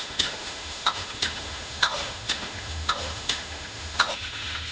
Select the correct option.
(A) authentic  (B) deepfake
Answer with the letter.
B